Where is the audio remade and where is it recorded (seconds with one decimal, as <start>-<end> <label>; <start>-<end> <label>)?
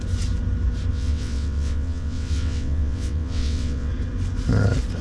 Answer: 0.0-0.9 recorded; 0.9-3.9 remade; 3.9-5.0 recorded